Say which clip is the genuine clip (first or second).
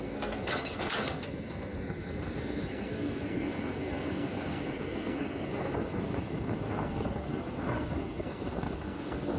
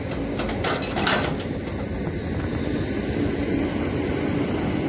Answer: second